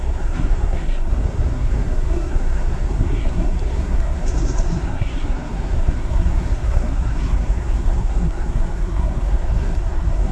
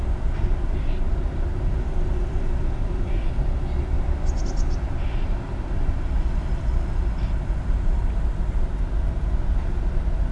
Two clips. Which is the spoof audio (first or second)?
first